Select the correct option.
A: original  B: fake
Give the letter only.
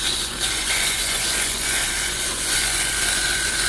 B